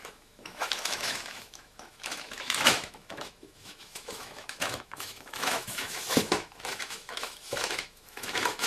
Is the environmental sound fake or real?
fake